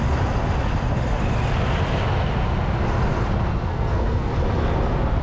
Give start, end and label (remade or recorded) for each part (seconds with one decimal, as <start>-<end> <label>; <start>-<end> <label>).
0.0-3.7 recorded; 3.7-4.3 remade; 4.3-5.2 recorded